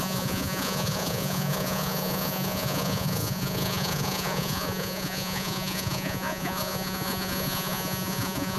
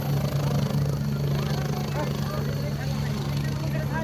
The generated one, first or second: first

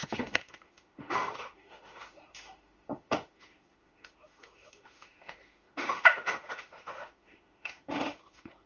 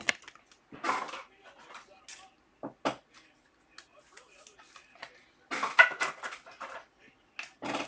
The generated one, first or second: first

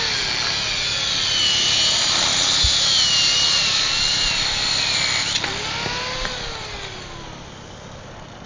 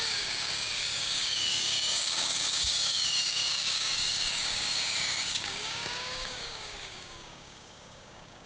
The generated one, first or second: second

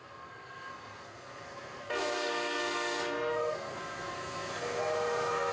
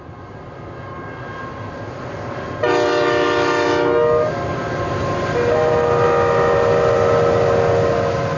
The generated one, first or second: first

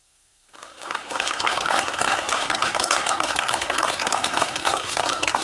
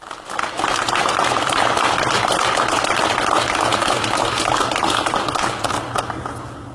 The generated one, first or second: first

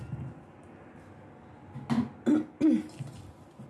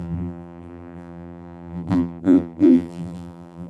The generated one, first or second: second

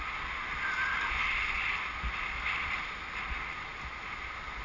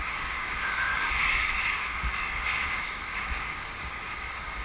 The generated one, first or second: second